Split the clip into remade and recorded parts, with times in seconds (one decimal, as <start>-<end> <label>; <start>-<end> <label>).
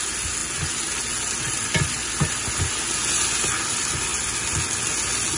0.0-5.4 recorded